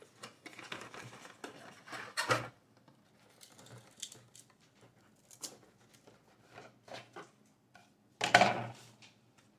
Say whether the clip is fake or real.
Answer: real